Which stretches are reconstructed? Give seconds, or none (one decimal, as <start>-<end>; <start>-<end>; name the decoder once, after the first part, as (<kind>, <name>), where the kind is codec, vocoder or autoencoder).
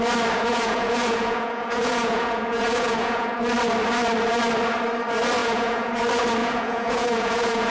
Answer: 0.5-3.4 (vocoder, Vocos); 5.4-5.9; 6.4-7.7